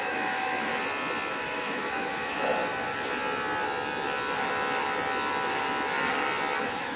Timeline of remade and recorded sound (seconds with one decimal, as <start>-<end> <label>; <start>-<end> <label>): 0.0-0.7 remade; 0.7-1.3 recorded; 1.3-2.5 remade; 2.5-6.6 recorded; 6.6-7.0 remade